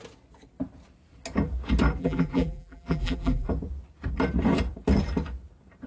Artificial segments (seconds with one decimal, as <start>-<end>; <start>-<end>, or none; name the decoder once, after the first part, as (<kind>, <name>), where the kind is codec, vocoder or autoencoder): 2.0-3.5 (vocoder, BigVGAN v2)